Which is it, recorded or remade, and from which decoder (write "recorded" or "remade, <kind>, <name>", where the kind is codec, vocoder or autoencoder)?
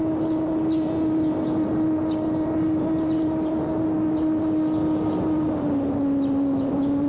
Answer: recorded